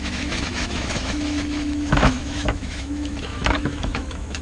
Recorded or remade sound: remade